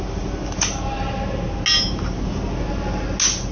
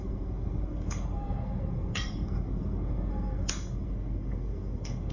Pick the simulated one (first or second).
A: second